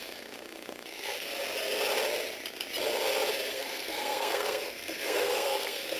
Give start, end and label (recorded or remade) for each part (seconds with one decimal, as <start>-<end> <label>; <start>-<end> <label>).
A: 0.0-1.3 remade; 1.3-3.5 recorded; 3.5-6.0 remade

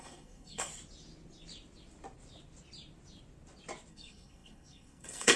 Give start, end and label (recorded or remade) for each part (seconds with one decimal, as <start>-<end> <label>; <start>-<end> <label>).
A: 0.0-0.7 remade; 0.7-3.9 recorded; 3.9-5.4 remade

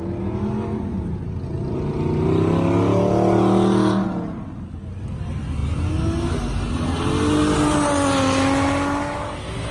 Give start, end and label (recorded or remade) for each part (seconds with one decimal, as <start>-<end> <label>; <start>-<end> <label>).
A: 0.0-9.7 recorded

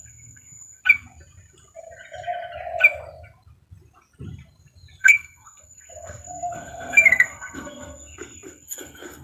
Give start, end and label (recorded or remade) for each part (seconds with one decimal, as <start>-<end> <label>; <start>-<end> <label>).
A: 0.0-0.8 remade; 0.8-5.0 recorded; 5.0-9.2 remade

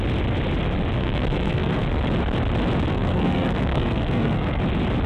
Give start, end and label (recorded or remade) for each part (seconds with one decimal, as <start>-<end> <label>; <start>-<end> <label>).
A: 0.0-1.0 recorded; 1.0-1.8 remade; 1.8-2.9 recorded; 2.9-4.6 remade; 4.6-5.1 recorded